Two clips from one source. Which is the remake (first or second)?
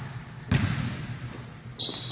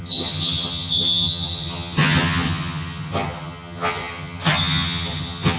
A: second